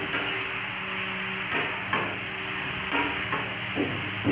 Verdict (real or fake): real